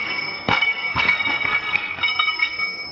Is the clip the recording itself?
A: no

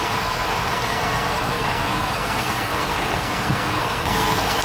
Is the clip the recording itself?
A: no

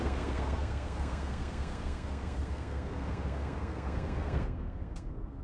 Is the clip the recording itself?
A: no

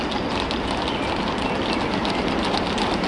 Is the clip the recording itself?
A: yes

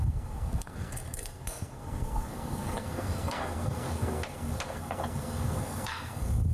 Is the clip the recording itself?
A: no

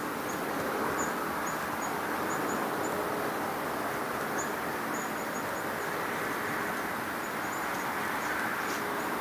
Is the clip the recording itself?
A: yes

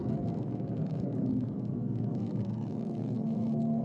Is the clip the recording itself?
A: no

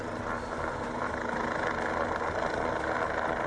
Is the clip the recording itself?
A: yes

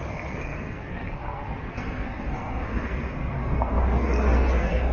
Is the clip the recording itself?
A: no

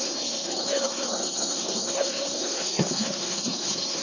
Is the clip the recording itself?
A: no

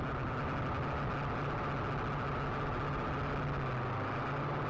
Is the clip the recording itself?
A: yes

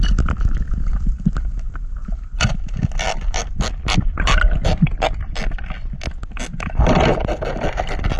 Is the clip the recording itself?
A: yes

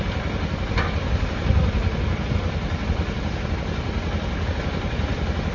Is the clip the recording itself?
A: yes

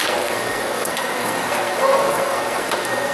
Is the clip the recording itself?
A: no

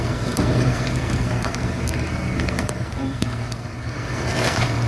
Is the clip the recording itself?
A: no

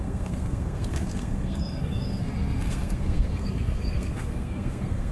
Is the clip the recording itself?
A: no